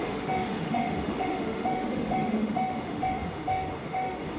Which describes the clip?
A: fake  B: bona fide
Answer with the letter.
A